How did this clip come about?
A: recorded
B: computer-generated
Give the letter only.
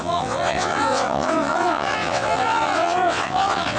B